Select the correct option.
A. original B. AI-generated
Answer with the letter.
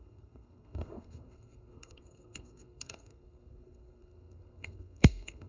B